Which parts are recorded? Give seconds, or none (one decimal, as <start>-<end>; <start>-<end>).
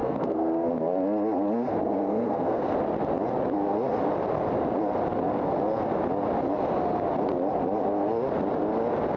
0.7-1.7; 2.7-9.2